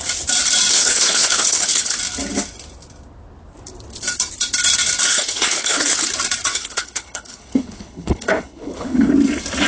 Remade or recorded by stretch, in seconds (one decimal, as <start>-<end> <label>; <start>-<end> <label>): 0.0-0.7 recorded; 0.7-2.0 remade; 2.0-5.1 recorded; 5.1-6.1 remade; 6.1-6.5 recorded; 6.5-9.1 remade; 9.1-9.7 recorded